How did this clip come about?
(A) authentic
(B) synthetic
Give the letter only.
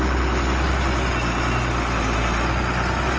A